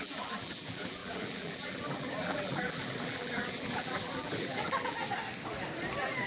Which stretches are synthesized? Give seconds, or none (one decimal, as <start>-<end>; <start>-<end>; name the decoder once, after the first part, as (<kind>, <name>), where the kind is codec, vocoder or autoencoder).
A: 0.0-5.0 (vocoder, BigVGAN v2)